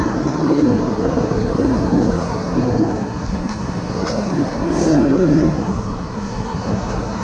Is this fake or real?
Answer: fake